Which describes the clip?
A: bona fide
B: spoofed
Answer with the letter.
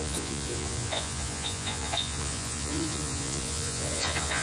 B